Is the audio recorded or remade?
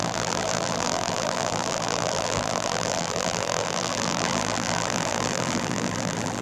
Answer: remade